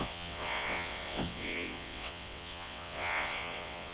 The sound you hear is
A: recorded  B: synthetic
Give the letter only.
B